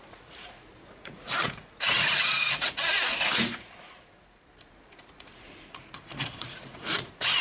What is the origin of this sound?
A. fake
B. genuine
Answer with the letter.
A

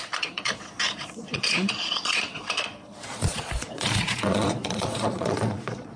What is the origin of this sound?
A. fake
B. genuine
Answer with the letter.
A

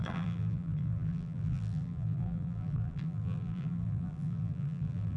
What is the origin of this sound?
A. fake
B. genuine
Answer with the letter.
A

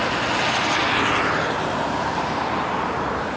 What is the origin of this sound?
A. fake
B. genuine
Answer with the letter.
B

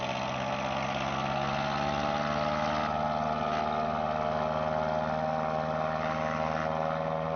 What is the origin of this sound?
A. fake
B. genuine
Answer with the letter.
B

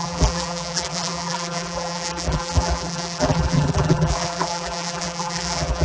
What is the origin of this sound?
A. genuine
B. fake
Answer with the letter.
B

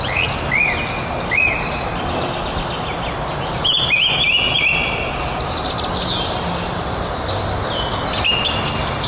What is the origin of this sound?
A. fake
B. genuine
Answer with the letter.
B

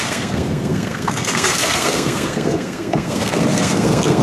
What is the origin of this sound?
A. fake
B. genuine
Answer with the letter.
A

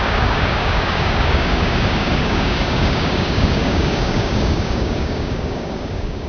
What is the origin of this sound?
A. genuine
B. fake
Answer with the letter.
B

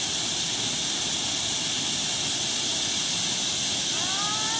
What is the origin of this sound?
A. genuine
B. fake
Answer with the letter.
A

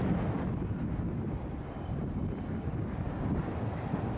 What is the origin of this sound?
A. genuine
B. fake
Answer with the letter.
A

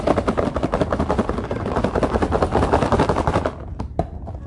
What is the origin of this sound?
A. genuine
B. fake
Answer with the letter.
A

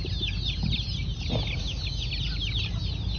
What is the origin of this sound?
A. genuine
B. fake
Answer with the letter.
A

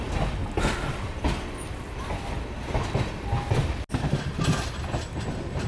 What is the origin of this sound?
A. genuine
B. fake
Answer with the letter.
A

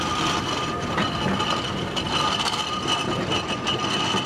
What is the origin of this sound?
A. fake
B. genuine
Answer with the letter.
B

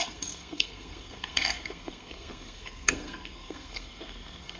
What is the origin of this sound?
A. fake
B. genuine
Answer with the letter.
A